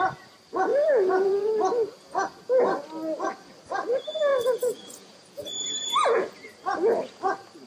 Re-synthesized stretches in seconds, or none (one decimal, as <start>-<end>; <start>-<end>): 0.7-1.5; 4.3-6.3